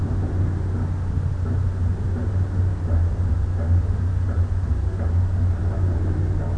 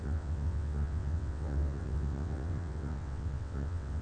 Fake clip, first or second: second